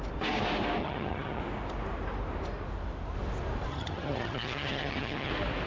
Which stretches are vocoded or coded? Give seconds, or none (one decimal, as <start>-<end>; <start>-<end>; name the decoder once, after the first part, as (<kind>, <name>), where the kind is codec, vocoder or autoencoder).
0.8-1.4 (vocoder, HiFi-GAN); 3.7-5.3